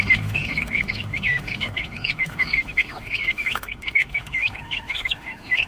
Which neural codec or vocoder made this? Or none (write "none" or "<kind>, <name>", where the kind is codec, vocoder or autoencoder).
autoencoder, DAC-VAE